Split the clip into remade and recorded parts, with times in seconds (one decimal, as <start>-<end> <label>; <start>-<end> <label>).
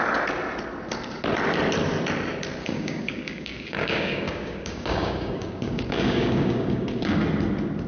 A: 0.0-2.6 recorded; 2.6-7.2 remade; 7.2-7.9 recorded